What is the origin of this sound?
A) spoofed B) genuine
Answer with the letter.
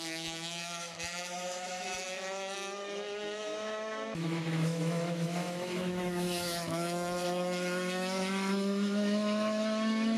A